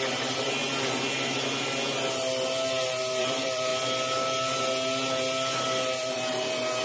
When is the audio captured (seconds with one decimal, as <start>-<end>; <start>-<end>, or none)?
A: 0.6-3.2; 3.7-5.6